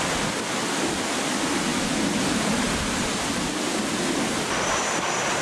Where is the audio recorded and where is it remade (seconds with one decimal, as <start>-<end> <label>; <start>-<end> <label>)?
0.0-5.4 recorded